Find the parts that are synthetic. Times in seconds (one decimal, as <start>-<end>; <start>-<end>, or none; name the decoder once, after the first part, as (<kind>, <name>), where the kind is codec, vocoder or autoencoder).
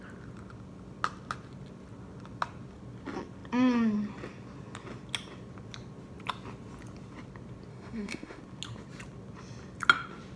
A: 7.7-8.4 (autoencoder, DAC-VAE)